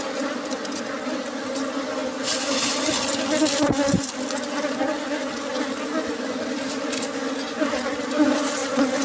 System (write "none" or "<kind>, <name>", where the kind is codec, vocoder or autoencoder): none